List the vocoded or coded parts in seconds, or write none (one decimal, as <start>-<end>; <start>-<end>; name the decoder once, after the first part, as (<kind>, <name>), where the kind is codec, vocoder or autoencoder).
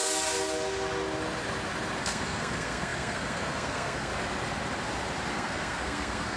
2.0-4.1 (codec, SNAC); 5.3-6.4